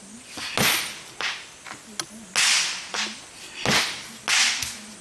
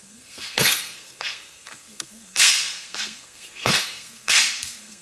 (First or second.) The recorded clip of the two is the first